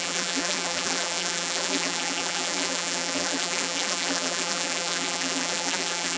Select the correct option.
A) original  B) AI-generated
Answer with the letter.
B